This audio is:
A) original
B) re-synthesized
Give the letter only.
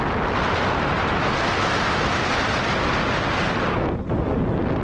A